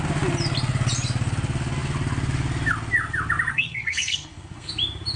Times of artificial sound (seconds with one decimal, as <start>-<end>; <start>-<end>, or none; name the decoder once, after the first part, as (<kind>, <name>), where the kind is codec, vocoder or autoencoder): 3.5-4.7 (codec, SNAC)